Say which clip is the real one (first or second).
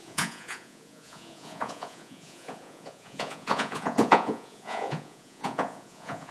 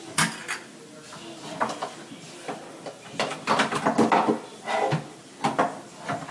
second